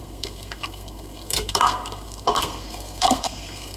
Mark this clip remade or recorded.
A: remade